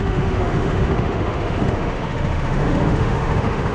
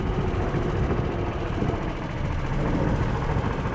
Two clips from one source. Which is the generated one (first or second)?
first